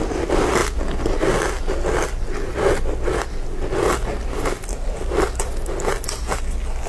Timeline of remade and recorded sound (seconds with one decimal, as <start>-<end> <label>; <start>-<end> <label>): 0.0-6.9 recorded